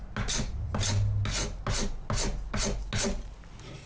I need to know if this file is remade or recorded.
recorded